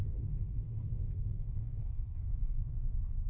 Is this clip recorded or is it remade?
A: remade